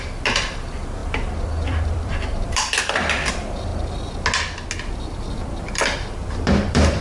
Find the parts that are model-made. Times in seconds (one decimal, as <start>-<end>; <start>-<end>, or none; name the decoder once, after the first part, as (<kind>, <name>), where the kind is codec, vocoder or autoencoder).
0.0-3.7 (vocoder, BigVGAN v2); 4.9-7.0